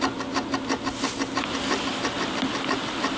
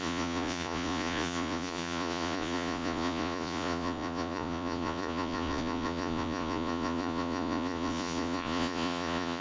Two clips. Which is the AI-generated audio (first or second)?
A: second